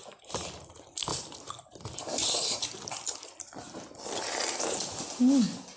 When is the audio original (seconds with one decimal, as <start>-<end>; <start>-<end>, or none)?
0.0-1.1; 4.6-5.8

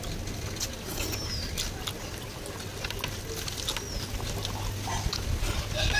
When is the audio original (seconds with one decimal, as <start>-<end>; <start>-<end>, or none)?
0.0-0.8; 1.5-6.0

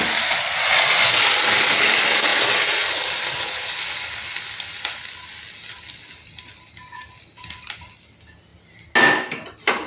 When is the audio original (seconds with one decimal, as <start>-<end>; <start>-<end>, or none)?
0.0-9.9